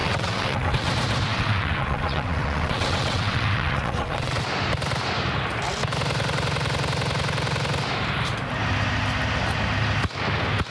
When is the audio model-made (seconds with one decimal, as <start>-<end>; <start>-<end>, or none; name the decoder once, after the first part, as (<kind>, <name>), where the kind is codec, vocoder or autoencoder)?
0.0-0.9 (vocoder, WaveNeXt); 1.3-4.4